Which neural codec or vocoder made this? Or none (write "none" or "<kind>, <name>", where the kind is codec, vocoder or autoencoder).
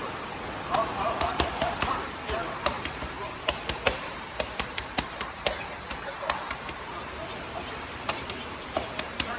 vocoder, BigVGAN v2